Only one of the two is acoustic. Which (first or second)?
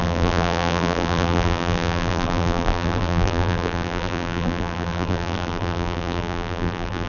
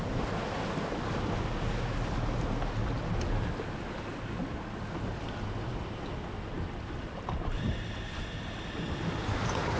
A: second